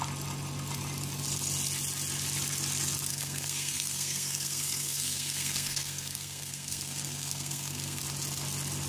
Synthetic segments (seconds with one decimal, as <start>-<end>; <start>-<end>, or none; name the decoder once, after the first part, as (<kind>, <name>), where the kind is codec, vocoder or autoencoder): 3.1-8.0 (codec, SNAC)